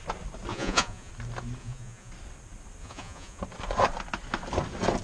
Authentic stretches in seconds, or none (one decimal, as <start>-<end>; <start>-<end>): 0.0-0.5; 1.1-1.6; 2.1-2.8; 3.4-5.0